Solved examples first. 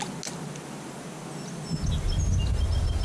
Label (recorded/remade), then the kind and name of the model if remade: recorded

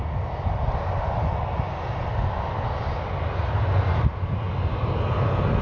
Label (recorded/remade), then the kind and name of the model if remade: recorded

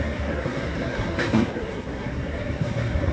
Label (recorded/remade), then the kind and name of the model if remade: remade, codec, SNAC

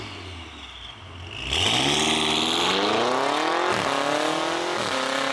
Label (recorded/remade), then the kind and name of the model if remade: recorded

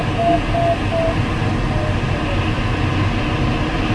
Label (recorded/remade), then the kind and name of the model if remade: recorded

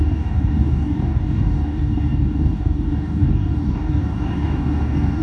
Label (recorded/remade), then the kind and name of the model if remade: remade, codec, DAC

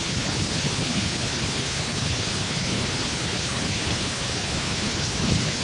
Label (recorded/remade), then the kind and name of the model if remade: remade, codec, HILCodec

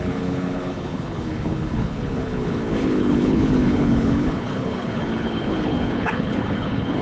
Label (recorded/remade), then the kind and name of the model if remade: remade, codec, HILCodec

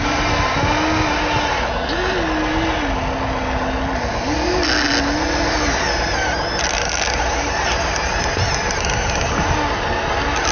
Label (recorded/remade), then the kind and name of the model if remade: recorded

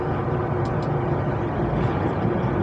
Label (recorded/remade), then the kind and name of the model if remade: recorded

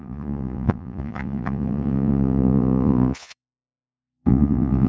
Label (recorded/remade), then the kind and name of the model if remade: remade, vocoder, Vocos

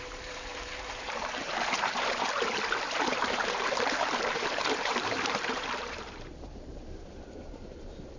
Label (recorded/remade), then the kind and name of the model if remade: remade, vocoder, BigVGAN v2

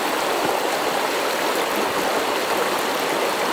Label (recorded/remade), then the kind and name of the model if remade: recorded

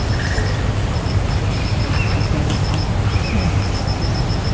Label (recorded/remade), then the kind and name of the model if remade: recorded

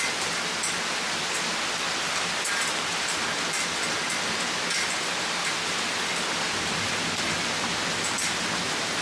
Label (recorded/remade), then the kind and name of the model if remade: recorded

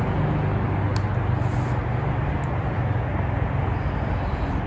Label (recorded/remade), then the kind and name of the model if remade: recorded